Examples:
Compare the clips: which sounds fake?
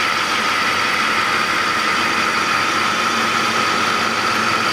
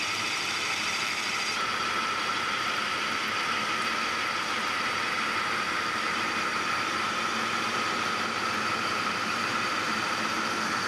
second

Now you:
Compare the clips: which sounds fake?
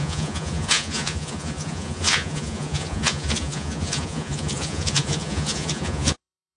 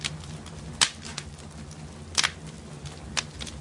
first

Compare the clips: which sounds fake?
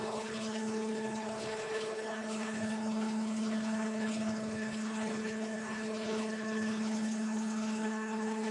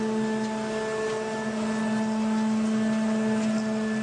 first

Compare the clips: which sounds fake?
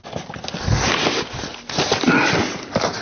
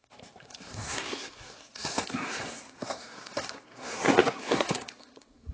second